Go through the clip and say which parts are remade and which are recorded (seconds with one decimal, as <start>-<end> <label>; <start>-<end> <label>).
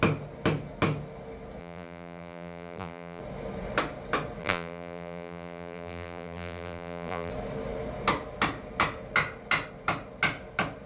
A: 0.0-1.6 recorded; 1.6-3.2 remade; 3.2-4.4 recorded; 4.4-7.3 remade; 7.3-10.9 recorded